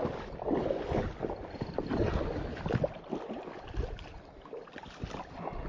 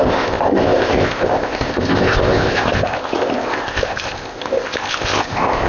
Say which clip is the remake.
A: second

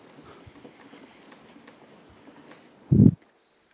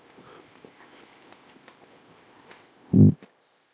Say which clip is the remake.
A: second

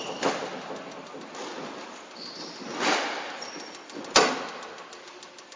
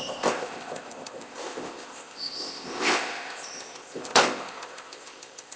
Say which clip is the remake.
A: second